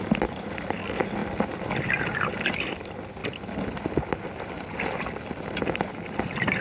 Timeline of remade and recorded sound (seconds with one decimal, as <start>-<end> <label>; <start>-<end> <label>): 0.0-6.6 recorded

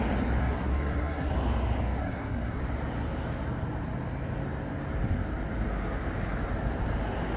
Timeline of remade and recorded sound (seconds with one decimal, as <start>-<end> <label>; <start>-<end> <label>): 0.0-0.4 recorded; 0.4-1.3 remade; 1.3-2.0 recorded; 2.0-2.6 remade; 2.6-7.4 recorded

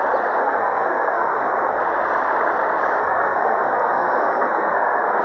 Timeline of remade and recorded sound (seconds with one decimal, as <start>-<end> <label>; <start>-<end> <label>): 0.0-0.4 recorded; 0.4-1.8 remade; 1.8-3.0 recorded; 3.0-5.2 remade

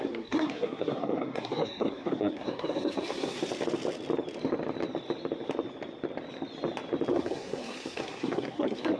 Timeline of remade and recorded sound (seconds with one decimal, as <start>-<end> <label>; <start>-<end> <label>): 0.0-3.4 remade; 3.4-7.1 recorded; 7.1-9.0 remade

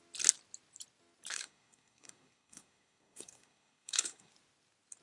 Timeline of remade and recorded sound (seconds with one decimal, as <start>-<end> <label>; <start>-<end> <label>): 0.0-1.3 recorded; 1.3-4.3 remade; 4.3-5.0 recorded

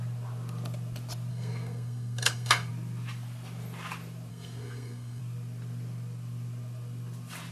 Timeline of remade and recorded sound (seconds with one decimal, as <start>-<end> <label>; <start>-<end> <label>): 0.0-1.3 recorded; 1.3-2.7 remade; 2.7-4.3 recorded; 4.3-5.2 remade; 5.2-7.5 recorded